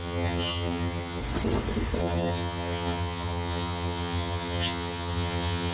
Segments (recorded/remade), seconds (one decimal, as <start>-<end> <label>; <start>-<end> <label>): 0.0-1.2 remade; 1.2-2.0 recorded; 2.0-5.7 remade